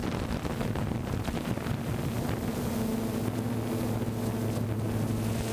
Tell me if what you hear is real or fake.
real